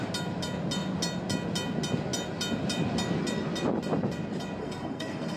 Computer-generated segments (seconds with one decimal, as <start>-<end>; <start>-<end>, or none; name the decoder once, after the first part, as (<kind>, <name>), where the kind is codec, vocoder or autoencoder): 4.6-5.4 (codec, SNAC)